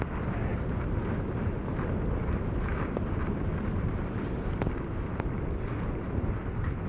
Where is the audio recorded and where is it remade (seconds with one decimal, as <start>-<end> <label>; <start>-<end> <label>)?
0.0-2.7 recorded; 2.7-6.9 remade